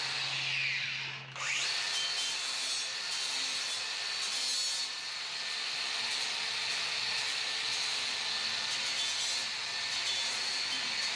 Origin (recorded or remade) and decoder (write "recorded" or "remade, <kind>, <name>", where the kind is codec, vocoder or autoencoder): recorded